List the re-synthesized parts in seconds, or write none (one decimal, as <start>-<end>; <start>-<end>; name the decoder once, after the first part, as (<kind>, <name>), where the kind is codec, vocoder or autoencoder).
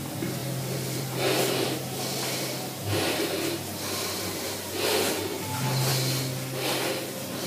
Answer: 0.4-4.7 (vocoder, BigVGAN v2)